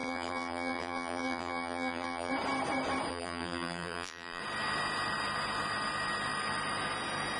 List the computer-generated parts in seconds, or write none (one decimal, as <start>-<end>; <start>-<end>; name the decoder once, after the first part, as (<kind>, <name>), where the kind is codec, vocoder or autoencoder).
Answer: 0.0-2.3 (vocoder, BigVGAN v2); 3.1-4.4